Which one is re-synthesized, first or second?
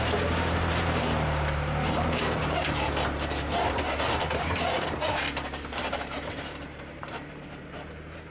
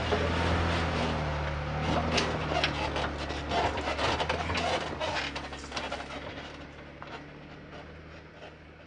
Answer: first